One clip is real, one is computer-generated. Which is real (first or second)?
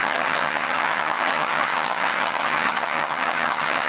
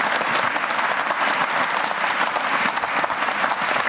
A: second